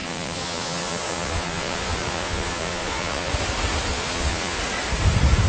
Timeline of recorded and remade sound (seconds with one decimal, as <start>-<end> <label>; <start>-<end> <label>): 0.0-3.3 remade; 3.3-3.9 recorded; 3.9-4.6 remade; 4.6-5.5 recorded

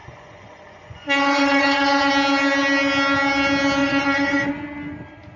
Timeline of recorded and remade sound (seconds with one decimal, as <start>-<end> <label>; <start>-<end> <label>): 0.0-2.1 remade; 2.1-3.8 recorded; 3.8-4.5 remade; 4.5-5.4 recorded

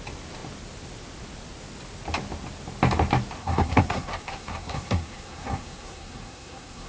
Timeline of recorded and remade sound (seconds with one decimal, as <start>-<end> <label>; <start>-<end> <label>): 0.0-3.4 recorded; 3.4-6.9 remade

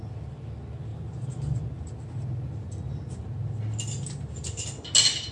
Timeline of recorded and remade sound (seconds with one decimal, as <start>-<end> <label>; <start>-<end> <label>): 0.0-0.9 recorded; 0.9-1.6 remade; 1.6-5.3 recorded

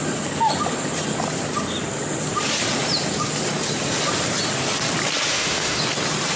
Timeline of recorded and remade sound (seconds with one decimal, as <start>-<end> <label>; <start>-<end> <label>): 0.0-5.3 recorded; 5.3-5.8 remade; 5.8-6.4 recorded

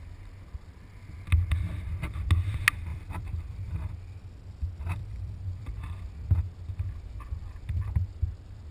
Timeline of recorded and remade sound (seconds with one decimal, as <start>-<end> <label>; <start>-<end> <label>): 0.0-2.9 recorded; 2.9-3.7 remade; 3.7-5.0 recorded; 5.0-5.7 remade; 5.7-8.7 recorded

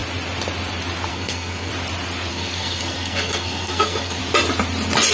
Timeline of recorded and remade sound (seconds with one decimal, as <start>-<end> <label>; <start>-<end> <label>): 0.0-1.1 recorded; 1.1-1.7 remade; 1.7-2.3 recorded; 2.3-4.2 remade; 4.2-5.1 recorded